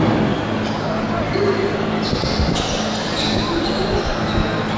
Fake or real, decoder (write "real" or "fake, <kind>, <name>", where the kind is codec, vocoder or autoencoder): real